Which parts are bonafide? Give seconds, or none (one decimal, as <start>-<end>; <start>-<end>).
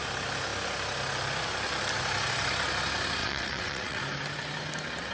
0.0-3.2; 4.0-5.1